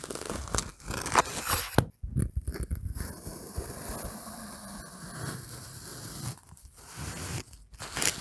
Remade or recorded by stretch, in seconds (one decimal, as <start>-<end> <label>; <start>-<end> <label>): 0.0-8.2 recorded